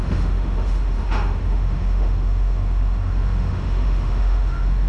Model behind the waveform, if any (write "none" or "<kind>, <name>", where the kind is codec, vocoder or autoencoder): autoencoder, DAC-VAE